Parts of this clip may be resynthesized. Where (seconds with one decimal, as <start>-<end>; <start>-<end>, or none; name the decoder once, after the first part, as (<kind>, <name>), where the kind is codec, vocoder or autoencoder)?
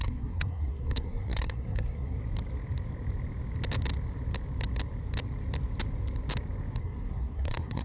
0.0-2.2 (codec, SNAC); 6.8-7.8